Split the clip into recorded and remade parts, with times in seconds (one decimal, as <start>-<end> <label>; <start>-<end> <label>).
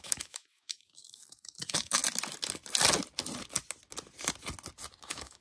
0.0-2.0 remade; 2.0-5.0 recorded; 5.0-5.4 remade